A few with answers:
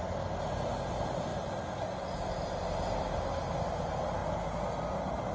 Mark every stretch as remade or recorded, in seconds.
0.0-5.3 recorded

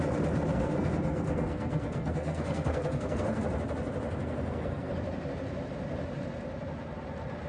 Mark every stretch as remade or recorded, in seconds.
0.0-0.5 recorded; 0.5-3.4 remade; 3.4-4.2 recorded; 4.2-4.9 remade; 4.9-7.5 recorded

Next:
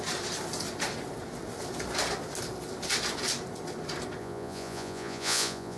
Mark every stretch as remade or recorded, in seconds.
0.0-4.2 recorded; 4.2-5.8 remade

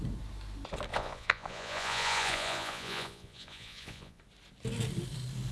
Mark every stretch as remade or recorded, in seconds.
0.0-0.9 recorded; 0.9-4.2 remade; 4.2-5.5 recorded

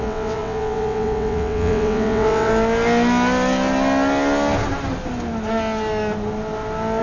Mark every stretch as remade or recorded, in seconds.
0.0-2.5 remade; 2.5-7.0 recorded

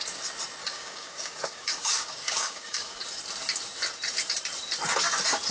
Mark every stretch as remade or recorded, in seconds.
0.0-0.6 recorded; 0.6-3.0 remade; 3.0-5.5 recorded

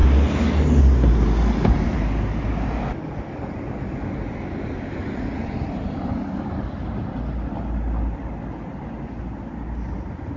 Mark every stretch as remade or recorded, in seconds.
0.0-10.4 recorded